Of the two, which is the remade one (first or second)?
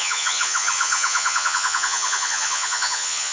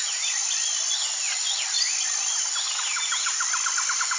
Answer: first